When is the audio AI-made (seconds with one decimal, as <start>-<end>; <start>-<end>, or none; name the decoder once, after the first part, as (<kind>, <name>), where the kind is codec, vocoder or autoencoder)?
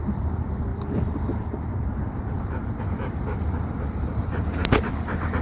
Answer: none